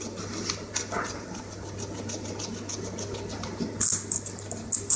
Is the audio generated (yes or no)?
no